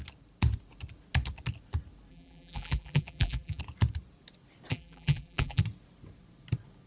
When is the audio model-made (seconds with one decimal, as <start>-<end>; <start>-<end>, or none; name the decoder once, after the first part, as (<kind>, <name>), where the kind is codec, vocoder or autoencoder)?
2.1-3.6 (vocoder, BigVGAN v2); 4.7-5.6